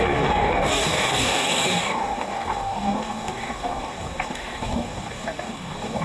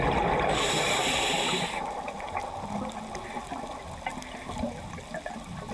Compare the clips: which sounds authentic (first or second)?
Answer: second